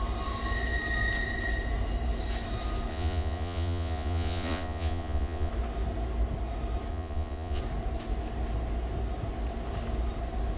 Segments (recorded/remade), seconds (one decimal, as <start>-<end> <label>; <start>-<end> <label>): 0.0-2.9 recorded; 2.9-5.5 remade; 5.5-6.9 recorded; 6.9-7.6 remade; 7.6-10.6 recorded